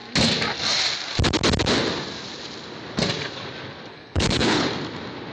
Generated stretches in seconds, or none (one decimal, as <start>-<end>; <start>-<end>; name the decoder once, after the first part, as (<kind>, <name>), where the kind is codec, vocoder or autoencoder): 3.9-4.7 (codec, HILCodec)